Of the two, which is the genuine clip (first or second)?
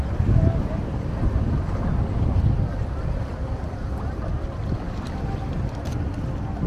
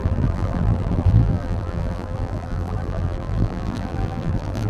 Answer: first